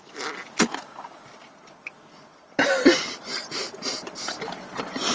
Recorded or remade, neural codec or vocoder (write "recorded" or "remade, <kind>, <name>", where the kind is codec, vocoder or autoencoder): recorded